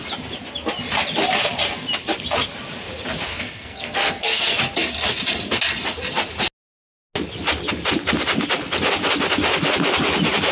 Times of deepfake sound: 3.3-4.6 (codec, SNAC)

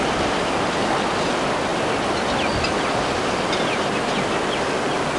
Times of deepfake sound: none

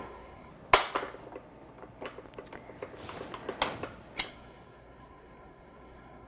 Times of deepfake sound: 0.0-0.5 (codec, SNAC); 4.3-6.3